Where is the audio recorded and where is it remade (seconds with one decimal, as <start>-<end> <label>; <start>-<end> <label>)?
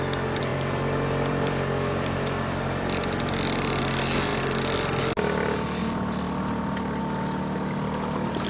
0.0-0.5 recorded; 0.5-3.8 remade; 3.8-5.8 recorded; 5.8-7.0 remade; 7.0-8.5 recorded